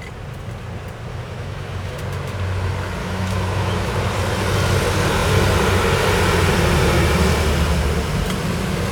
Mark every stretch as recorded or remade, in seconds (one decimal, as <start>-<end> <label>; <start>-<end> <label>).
0.0-1.1 recorded; 1.1-2.0 remade; 2.0-3.0 recorded; 3.0-3.9 remade; 3.9-8.9 recorded